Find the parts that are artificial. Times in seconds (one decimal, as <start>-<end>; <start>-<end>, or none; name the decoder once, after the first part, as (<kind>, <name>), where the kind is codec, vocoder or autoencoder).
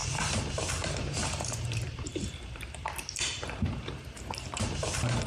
0.0-5.3 (vocoder, BigVGAN v2)